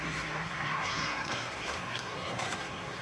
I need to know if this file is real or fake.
fake